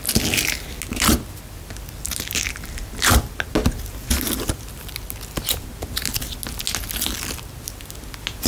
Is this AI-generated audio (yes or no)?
no